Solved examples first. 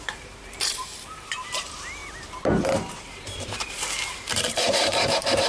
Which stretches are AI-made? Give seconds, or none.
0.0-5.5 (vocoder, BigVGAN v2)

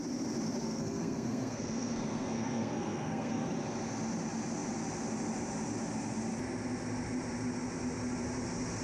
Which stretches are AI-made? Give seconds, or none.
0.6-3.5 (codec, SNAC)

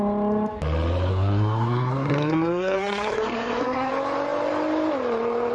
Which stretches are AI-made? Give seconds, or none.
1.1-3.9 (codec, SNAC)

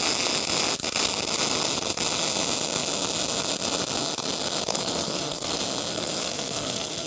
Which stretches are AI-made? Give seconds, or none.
4.7-5.5 (codec, SNAC); 5.9-7.1

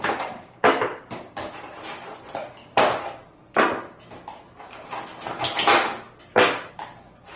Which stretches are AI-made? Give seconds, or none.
none